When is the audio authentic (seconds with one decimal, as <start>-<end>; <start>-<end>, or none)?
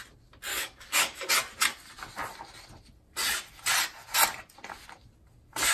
0.0-0.5; 1.3-5.7